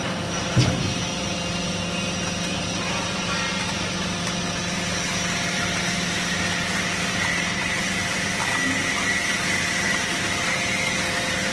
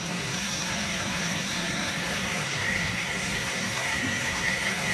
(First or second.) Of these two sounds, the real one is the first